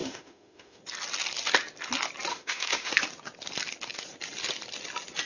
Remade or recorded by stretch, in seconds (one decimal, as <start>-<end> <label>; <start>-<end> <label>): 0.0-0.8 remade; 0.8-2.3 recorded; 2.3-2.9 remade; 2.9-5.3 recorded

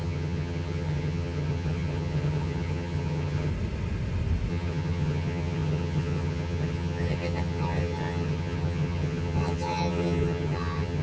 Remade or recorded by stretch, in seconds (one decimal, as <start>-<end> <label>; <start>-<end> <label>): 0.0-3.5 remade; 3.5-4.5 recorded; 4.5-11.0 remade

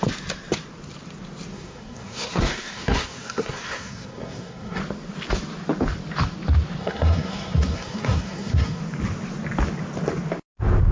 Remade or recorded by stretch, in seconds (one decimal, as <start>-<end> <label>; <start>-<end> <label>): 0.0-1.5 recorded; 1.5-4.8 remade; 4.8-6.8 recorded; 6.8-8.8 remade; 8.8-10.9 recorded

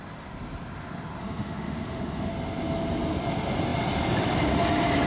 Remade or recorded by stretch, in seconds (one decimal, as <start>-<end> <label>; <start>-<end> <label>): 0.0-1.2 recorded; 1.2-2.3 remade; 2.3-5.1 recorded

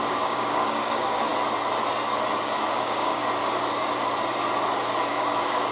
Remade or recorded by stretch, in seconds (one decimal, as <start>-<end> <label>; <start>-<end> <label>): 0.0-1.3 remade; 1.3-2.4 recorded; 2.4-3.2 remade; 3.2-5.1 recorded; 5.1-5.7 remade

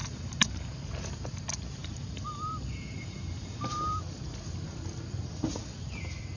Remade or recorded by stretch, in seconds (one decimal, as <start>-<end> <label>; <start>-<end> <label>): 0.0-0.7 remade; 0.7-1.8 recorded; 1.8-4.0 remade; 4.0-6.4 recorded